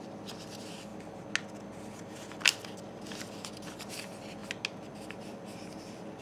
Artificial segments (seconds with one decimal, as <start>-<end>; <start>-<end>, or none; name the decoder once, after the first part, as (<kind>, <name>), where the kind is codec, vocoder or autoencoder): 0.0-0.9 (vocoder, BigVGAN v2); 3.5-4.4; 4.9-6.2